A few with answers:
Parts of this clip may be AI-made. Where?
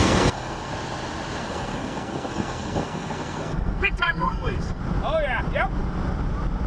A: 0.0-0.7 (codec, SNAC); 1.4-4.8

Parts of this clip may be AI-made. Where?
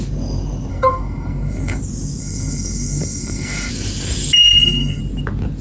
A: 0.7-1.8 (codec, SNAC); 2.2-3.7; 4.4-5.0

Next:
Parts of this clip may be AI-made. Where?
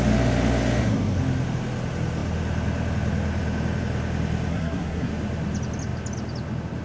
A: 4.5-5.1 (codec, SNAC)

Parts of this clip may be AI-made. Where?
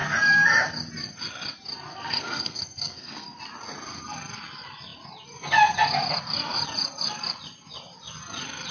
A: 1.9-3.4 (codec, SNAC)